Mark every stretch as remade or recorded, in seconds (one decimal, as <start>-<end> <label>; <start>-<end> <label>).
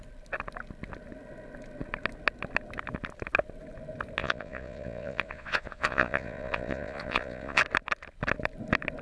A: 0.0-4.2 recorded; 4.2-7.6 remade; 7.6-9.0 recorded